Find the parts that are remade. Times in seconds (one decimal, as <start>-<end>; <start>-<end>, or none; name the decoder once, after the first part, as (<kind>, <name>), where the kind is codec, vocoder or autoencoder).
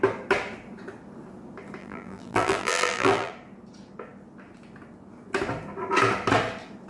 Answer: 1.8-3.3 (vocoder, BigVGAN v2)